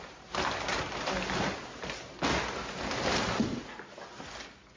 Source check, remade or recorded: recorded